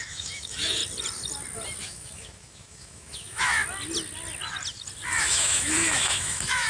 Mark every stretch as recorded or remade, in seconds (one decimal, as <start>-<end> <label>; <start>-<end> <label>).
0.0-0.8 remade; 0.8-1.8 recorded; 1.8-3.6 remade; 3.6-5.2 recorded; 5.2-6.7 remade